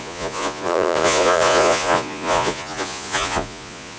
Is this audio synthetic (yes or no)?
yes